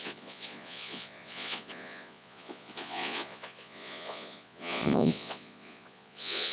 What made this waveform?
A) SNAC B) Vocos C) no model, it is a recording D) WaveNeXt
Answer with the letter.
B